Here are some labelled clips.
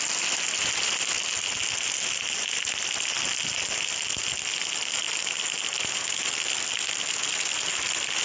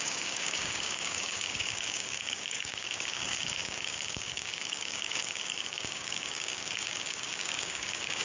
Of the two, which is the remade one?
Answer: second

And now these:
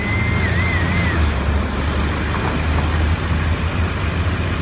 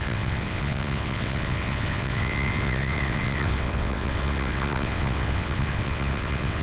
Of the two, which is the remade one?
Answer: second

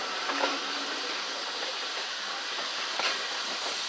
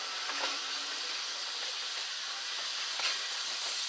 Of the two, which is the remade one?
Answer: first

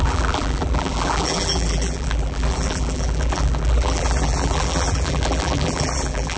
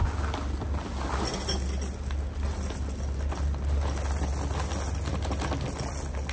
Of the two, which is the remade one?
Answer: first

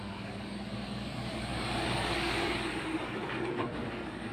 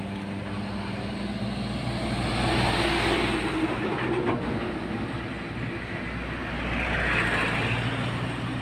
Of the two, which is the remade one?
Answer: first